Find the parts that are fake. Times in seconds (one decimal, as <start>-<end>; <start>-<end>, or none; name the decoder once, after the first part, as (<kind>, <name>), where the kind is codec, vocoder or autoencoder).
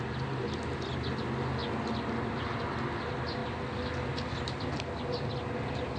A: none